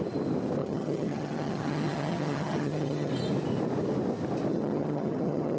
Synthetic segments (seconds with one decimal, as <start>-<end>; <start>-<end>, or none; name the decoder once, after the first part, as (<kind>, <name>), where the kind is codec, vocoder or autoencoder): 0.6-3.1 (vocoder, HiFi-GAN); 4.5-5.6

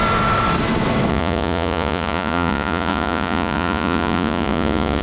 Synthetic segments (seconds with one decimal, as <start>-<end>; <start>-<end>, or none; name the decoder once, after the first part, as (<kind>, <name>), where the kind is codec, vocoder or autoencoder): 1.1-5.0 (vocoder, Vocos)

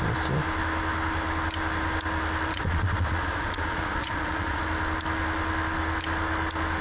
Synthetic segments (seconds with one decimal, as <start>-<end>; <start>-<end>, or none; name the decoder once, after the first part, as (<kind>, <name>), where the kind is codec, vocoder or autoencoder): 2.5-4.6 (vocoder, Vocos)

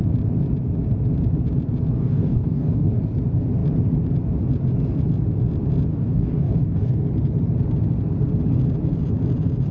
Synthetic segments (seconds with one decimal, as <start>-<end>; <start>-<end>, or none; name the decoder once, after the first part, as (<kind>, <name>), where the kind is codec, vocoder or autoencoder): 2.0-2.9 (codec, DAC); 5.9-7.0

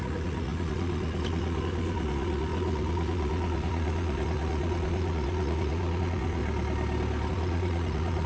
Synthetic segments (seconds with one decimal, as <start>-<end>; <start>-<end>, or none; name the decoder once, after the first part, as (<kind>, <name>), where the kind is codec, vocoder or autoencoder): 0.0-6.4 (vocoder, Vocos); 7.3-8.3

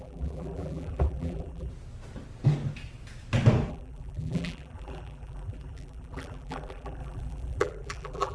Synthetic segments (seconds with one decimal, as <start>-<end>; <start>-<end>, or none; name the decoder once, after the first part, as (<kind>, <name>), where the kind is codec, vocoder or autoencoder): 0.0-1.7 (vocoder, BigVGAN v2); 3.7-8.3

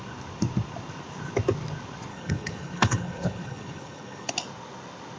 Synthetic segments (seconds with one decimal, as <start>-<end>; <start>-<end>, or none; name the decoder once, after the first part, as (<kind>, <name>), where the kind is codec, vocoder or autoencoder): 2.1-4.3 (codec, HILCodec)